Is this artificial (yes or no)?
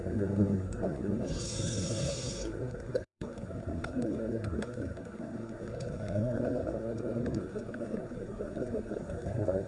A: yes